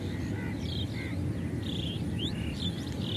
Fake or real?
real